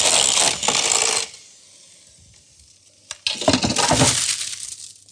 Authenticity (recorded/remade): recorded